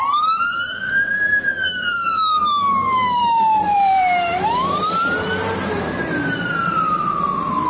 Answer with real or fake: fake